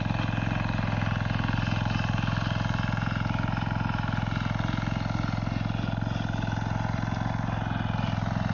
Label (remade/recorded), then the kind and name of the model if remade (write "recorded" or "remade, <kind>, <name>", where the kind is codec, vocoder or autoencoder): recorded